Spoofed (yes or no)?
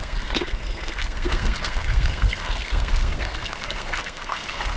yes